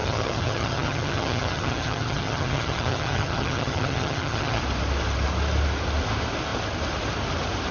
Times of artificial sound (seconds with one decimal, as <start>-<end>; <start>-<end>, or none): 0.0-4.6